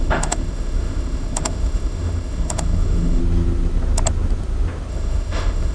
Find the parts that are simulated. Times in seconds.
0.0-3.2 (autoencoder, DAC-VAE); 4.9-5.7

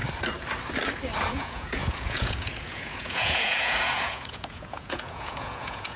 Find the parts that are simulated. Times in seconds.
1.3-6.0 (vocoder, Vocos)